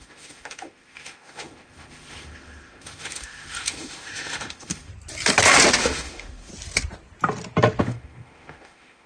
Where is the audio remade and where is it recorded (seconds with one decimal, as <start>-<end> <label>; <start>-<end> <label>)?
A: 0.0-4.9 remade; 4.9-5.8 recorded; 5.8-6.5 remade; 6.5-7.8 recorded; 7.8-9.1 remade